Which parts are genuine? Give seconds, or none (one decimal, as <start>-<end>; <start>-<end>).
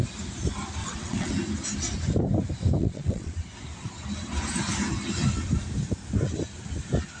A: 0.0-0.8; 1.3-2.8; 3.4-7.2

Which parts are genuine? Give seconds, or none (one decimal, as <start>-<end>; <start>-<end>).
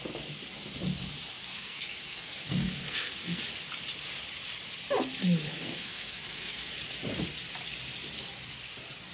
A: 0.0-1.4; 3.4-5.5; 6.7-9.1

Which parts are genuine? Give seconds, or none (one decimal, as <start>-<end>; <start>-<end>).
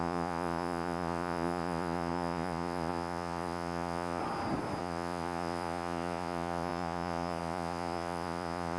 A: 4.2-4.8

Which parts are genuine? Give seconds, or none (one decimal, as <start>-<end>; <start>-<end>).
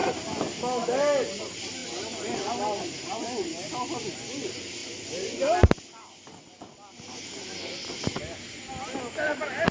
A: 0.0-9.7